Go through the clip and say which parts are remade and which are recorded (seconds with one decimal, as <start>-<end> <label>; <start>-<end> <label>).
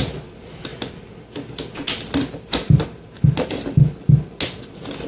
0.0-5.1 recorded